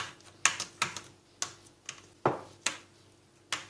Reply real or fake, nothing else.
real